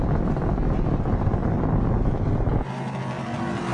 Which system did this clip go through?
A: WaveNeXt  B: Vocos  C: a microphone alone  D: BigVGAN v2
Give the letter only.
C